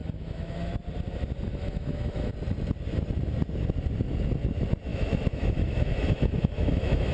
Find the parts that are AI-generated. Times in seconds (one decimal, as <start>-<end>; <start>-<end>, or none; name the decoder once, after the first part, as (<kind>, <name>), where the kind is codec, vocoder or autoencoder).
0.0-0.7 (autoencoder, DAC-VAE); 1.5-2.3; 4.9-7.1